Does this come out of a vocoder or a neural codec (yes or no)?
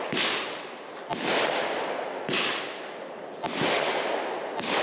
no